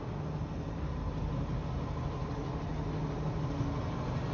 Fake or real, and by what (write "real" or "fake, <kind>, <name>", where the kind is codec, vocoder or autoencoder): real